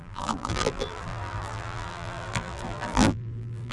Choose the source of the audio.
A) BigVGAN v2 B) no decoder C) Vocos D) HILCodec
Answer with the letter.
A